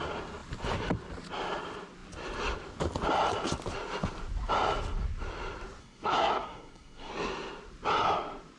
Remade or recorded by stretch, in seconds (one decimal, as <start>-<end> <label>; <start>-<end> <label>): 0.0-5.8 recorded; 5.8-7.1 remade; 7.1-8.6 recorded